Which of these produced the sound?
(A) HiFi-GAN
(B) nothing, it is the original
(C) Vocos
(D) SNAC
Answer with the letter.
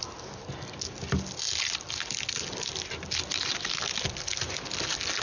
B